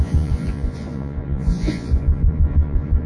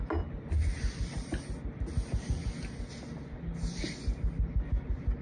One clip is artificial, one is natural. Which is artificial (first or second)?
first